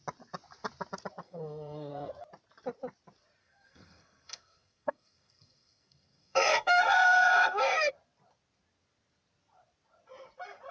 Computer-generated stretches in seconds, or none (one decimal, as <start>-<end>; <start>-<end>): 1.2-1.9; 3.4-7.9